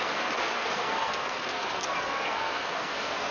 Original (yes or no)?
no